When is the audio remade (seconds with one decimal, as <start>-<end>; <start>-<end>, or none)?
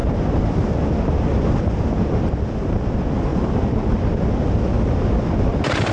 none